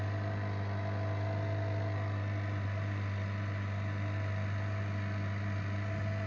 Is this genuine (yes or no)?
yes